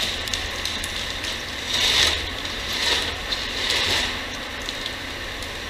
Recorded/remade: remade